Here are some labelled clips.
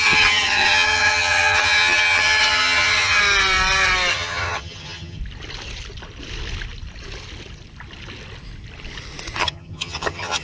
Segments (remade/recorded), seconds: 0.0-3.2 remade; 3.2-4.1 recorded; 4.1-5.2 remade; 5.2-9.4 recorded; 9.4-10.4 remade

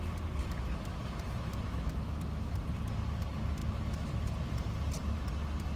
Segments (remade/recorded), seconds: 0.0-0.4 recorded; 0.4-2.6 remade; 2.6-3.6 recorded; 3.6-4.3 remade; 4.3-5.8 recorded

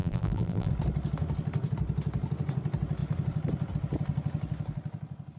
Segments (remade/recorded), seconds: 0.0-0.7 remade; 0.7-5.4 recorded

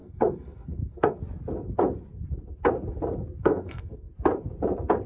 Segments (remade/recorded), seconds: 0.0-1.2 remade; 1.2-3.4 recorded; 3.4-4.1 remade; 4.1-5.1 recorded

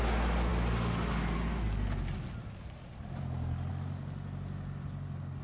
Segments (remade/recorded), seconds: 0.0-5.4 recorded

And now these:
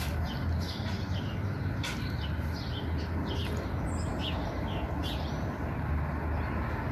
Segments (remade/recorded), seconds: 0.0-6.9 recorded